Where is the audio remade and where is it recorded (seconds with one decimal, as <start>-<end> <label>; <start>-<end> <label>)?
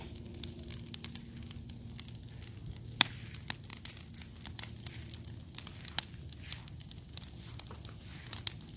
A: 0.0-8.8 recorded